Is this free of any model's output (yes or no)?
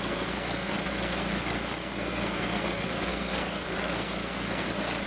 no